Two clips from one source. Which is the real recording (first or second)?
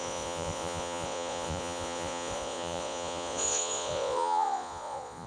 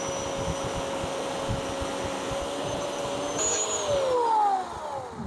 second